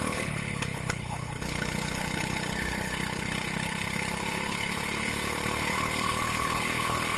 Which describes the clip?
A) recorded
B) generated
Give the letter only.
B